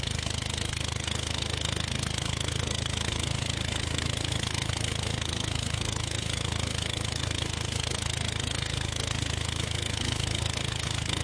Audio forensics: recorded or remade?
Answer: remade